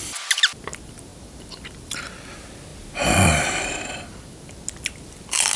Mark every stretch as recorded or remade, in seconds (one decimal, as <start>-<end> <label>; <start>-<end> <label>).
0.0-5.6 recorded